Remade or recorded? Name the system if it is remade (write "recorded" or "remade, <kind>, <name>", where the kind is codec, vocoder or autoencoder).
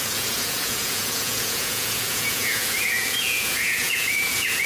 remade, vocoder, Vocos